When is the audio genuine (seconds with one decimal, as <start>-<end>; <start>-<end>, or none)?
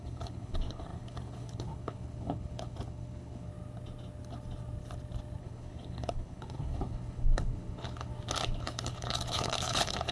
3.5-5.4; 8.1-8.6